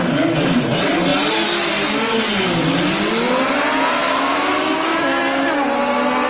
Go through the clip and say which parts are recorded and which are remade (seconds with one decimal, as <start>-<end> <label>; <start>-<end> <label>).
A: 0.0-4.1 recorded; 4.1-5.2 remade; 5.2-6.3 recorded